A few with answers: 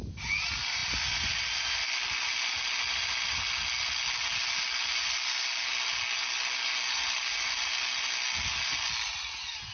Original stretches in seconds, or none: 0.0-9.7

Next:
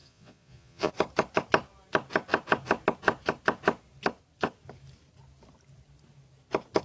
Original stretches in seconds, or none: 0.9-6.8

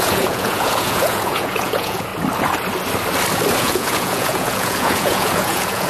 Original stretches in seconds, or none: 2.1-3.6

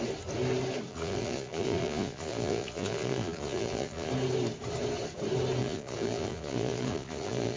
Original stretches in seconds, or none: 0.0-0.9; 4.1-5.6

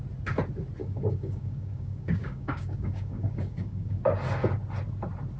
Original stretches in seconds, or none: 0.0-0.8; 4.0-5.4